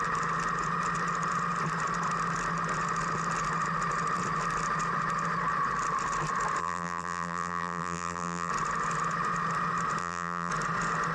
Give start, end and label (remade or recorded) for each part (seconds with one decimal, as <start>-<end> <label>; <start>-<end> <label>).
0.0-6.6 recorded; 6.6-8.5 remade; 8.5-10.0 recorded; 10.0-10.5 remade; 10.5-11.1 recorded

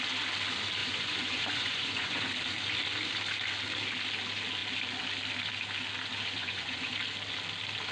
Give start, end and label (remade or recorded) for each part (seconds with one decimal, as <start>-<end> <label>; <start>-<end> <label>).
0.0-0.8 recorded; 0.8-2.2 remade; 2.2-6.4 recorded; 6.4-6.9 remade; 6.9-7.9 recorded

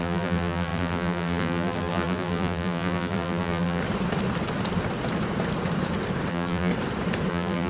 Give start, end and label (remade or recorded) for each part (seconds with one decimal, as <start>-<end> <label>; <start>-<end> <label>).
0.0-3.8 remade; 3.8-6.3 recorded; 6.3-6.7 remade; 6.7-7.3 recorded; 7.3-7.7 remade

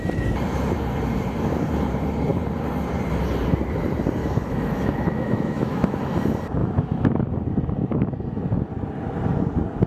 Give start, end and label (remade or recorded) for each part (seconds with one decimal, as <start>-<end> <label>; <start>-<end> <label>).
0.0-4.2 recorded; 4.2-6.0 remade; 6.0-6.6 recorded; 6.6-7.3 remade; 7.3-9.9 recorded

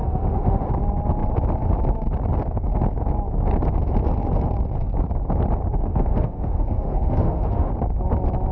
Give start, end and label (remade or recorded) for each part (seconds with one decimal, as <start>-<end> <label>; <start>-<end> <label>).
0.0-0.7 remade; 0.7-5.9 recorded; 5.9-7.7 remade; 7.7-8.5 recorded

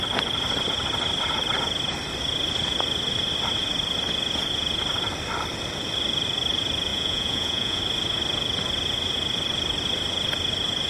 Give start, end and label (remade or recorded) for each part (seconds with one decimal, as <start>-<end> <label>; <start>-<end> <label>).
0.0-6.9 recorded; 6.9-7.8 remade; 7.8-10.9 recorded

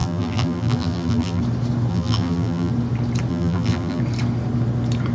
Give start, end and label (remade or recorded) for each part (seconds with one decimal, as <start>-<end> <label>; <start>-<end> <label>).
0.0-1.4 remade; 1.4-1.9 recorded; 1.9-2.7 remade; 2.7-3.3 recorded; 3.3-4.0 remade; 4.0-5.1 recorded